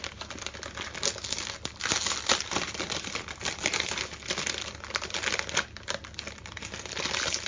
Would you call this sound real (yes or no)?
yes